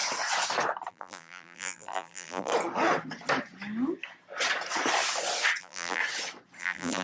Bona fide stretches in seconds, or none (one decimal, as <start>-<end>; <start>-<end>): 0.0-0.9; 2.5-5.6; 6.0-6.6